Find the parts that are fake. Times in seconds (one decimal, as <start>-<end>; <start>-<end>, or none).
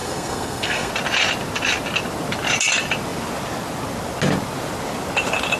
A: 0.0-0.9